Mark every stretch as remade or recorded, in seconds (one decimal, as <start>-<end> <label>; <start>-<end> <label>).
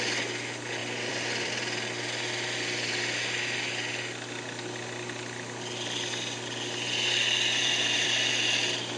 0.0-0.8 recorded; 0.8-1.5 remade; 1.5-7.6 recorded; 7.6-8.3 remade; 8.3-9.0 recorded